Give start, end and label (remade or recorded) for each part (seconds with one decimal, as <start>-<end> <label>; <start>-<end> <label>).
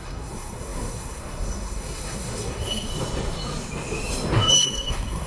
0.0-2.9 remade; 2.9-4.5 recorded; 4.5-5.3 remade